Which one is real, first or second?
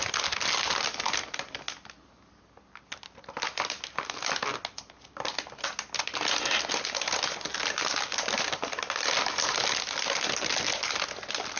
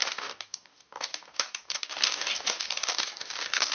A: first